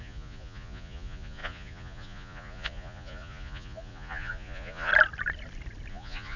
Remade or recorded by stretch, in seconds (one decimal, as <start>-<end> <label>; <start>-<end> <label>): 0.0-4.9 remade; 4.9-5.9 recorded; 5.9-6.4 remade